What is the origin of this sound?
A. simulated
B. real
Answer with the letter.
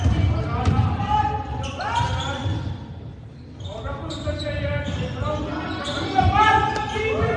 B